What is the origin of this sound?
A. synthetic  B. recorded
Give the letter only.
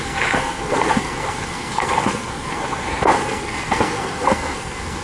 A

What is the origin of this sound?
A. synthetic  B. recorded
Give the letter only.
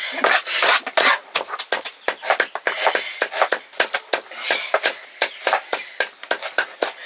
B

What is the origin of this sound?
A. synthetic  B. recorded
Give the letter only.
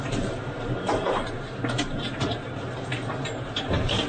A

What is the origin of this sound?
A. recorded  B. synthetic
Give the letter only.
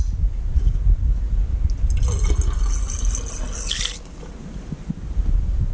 A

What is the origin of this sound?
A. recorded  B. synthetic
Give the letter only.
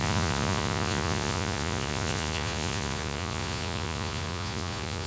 B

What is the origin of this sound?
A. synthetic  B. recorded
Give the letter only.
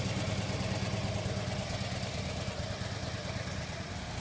B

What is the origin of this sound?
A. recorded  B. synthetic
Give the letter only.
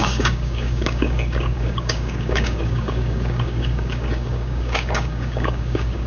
B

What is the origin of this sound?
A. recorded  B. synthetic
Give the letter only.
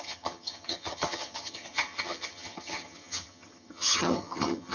B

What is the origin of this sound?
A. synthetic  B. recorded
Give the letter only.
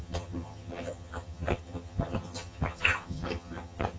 A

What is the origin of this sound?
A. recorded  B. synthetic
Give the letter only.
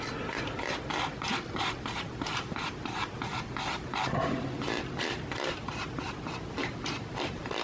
A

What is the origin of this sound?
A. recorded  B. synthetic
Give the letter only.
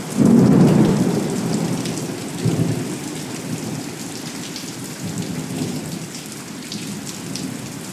A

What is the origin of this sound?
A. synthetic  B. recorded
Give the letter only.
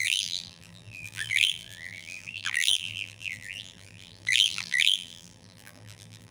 A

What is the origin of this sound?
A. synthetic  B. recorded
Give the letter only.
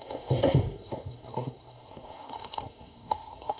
A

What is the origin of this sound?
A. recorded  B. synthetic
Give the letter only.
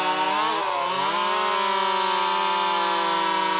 A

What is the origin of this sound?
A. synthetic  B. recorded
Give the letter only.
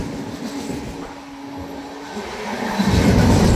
B